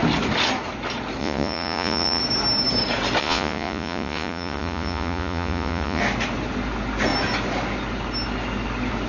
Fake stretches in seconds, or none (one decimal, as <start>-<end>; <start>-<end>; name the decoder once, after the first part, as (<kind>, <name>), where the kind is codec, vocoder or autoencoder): 1.2-2.2 (vocoder, Vocos); 3.2-6.0